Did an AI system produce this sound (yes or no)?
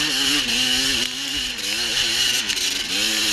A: no